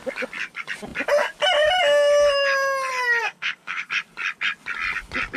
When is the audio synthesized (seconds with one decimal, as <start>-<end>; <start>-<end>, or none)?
3.2-3.9